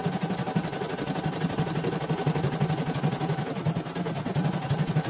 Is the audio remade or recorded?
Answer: recorded